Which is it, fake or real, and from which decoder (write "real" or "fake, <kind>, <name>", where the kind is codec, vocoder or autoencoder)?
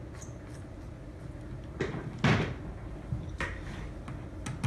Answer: real